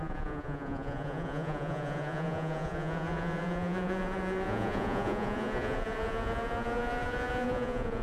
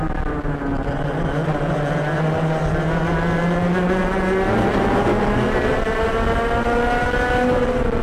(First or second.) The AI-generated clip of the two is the first